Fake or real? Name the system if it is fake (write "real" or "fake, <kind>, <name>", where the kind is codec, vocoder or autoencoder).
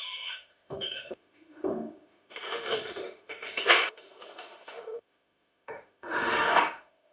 fake, autoencoder, DAC-VAE